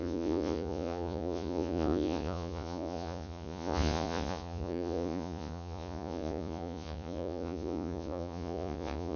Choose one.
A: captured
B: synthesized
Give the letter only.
B